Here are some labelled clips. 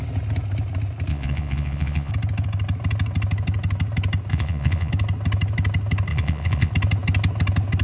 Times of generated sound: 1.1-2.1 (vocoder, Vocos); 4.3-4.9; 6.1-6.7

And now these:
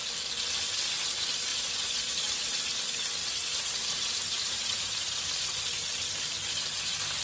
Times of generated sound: 1.5-2.5 (vocoder, BigVGAN v2); 3.2-6.0

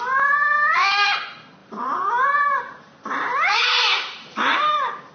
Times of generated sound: 1.6-5.1 (vocoder, BigVGAN v2)

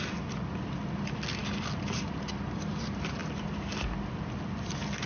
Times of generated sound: none

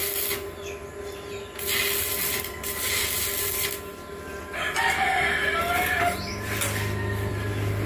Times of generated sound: none

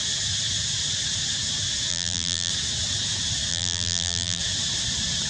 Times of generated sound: 1.9-2.5 (vocoder, BigVGAN v2); 3.5-4.4

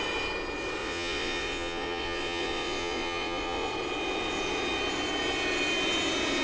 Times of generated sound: 0.8-3.7 (vocoder, Vocos)

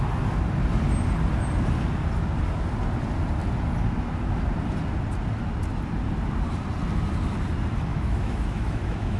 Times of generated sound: 7.9-9.2 (autoencoder, DAC-VAE)